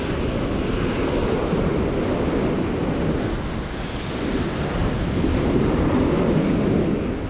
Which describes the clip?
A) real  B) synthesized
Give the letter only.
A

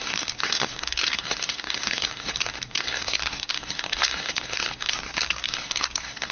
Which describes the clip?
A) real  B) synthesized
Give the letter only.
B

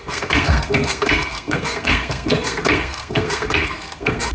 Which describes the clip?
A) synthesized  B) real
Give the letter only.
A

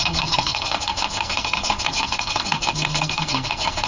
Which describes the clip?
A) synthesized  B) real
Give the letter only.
A